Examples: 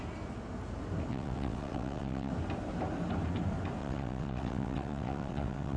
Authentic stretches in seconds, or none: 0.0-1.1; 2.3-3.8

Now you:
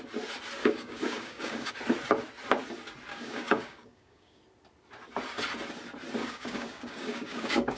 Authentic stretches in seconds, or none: 0.0-0.6; 1.7-3.1; 4.4-6.2

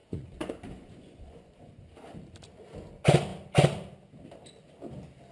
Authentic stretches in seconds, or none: 1.9-5.3